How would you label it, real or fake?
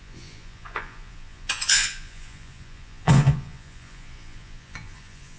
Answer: fake